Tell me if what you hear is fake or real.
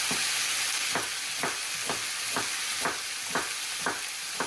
real